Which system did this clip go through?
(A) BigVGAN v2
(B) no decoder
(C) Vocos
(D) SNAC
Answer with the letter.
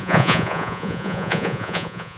C